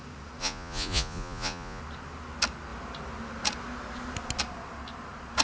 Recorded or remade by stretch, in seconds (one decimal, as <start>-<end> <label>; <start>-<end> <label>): 0.0-0.4 recorded; 0.4-1.8 remade; 1.8-5.4 recorded